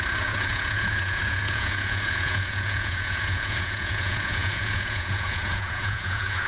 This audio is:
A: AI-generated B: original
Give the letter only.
A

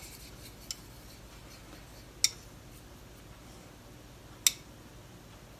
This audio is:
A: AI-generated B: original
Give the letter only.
B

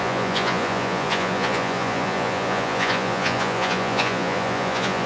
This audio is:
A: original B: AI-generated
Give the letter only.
B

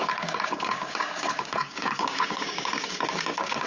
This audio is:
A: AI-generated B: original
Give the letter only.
A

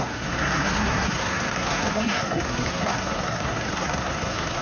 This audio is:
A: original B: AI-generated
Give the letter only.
B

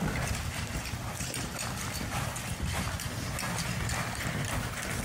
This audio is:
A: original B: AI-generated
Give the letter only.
A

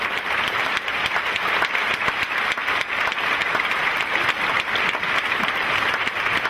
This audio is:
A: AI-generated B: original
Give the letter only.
B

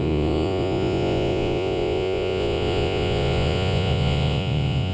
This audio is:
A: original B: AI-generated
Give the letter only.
B